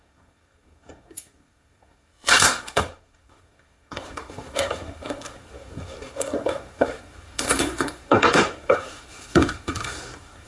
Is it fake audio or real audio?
fake